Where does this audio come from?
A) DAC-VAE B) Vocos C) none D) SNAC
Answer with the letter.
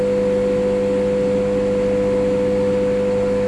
C